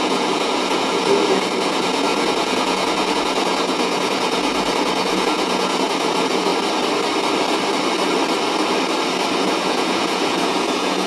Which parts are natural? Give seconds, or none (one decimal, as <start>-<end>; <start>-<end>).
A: 6.5-9.4